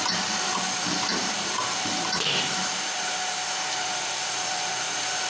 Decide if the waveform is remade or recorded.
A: remade